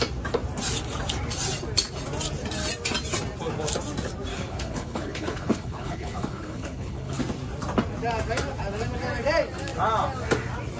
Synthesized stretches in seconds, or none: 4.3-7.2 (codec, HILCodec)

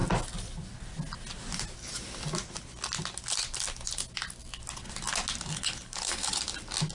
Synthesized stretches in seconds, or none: 5.5-6.4 (codec, HILCodec)

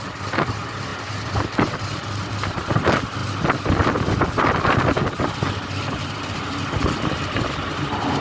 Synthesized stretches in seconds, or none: none

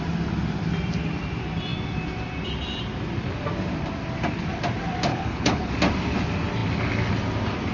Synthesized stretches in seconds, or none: 5.1-5.7 (codec, HILCodec)

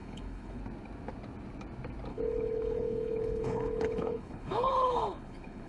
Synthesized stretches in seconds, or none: 0.0-0.6 (codec, HILCodec); 2.1-5.7

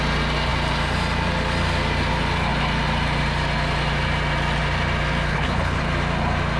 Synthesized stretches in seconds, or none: 5.3-5.8 (codec, HILCodec)